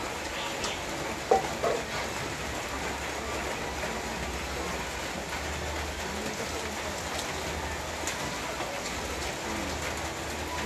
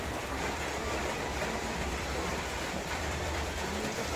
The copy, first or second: second